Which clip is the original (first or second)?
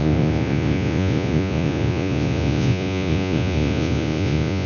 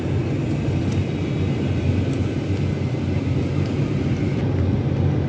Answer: second